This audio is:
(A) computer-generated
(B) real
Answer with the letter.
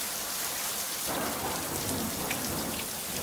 B